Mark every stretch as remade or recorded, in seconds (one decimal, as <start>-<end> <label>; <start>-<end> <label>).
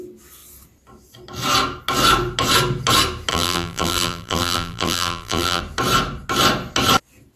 0.0-3.3 recorded; 3.3-5.6 remade; 5.6-7.4 recorded